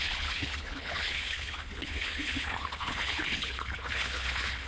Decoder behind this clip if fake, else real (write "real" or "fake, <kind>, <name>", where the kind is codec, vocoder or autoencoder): fake, codec, HILCodec